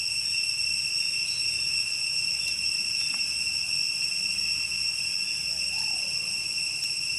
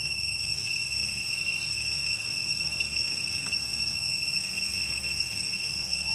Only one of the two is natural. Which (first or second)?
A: first